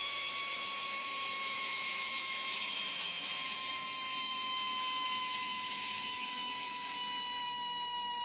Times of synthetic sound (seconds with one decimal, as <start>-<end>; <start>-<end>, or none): 0.0-8.2